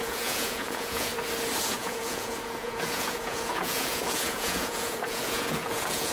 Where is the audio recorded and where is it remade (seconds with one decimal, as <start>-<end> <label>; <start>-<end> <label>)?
0.0-1.1 remade; 1.1-1.6 recorded; 1.6-6.1 remade